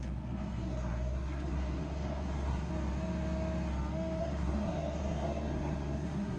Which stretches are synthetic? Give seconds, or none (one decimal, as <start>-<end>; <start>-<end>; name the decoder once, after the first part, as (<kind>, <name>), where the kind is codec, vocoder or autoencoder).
0.0-2.7 (codec, SNAC); 4.2-6.4